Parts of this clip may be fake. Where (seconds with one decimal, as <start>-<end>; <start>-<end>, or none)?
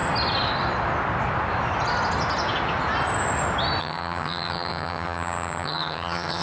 3.8-6.4